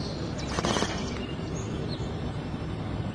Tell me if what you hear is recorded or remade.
recorded